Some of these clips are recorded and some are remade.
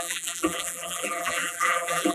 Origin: remade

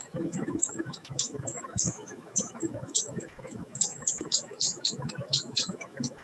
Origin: remade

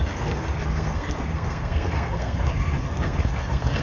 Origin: remade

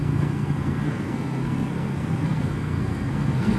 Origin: remade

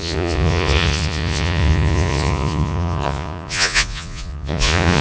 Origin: remade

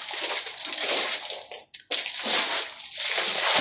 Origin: recorded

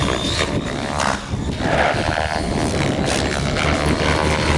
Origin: recorded